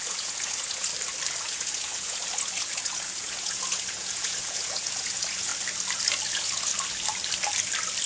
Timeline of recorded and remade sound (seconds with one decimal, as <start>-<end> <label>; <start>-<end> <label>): 0.0-0.9 remade; 0.9-1.4 recorded; 1.4-5.5 remade; 5.5-6.3 recorded; 6.3-6.7 remade; 6.7-8.1 recorded